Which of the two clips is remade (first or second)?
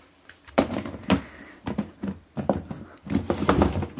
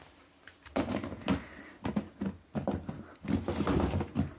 first